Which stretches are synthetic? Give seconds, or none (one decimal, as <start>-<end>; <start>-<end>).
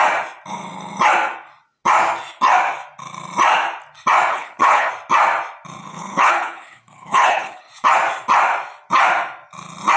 4.3-4.9; 5.8-7.7